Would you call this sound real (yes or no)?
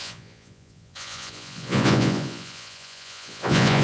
no